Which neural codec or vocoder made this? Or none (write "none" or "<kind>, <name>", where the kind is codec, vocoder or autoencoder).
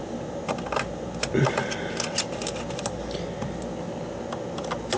none